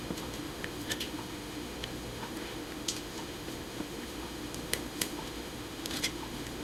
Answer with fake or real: fake